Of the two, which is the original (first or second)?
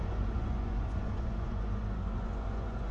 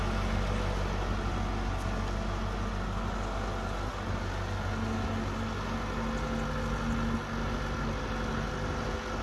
second